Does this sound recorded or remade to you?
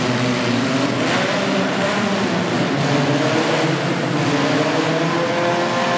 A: recorded